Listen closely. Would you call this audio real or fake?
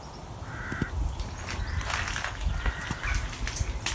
real